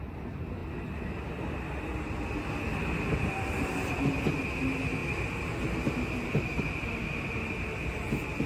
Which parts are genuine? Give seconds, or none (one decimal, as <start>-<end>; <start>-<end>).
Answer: 0.0-8.5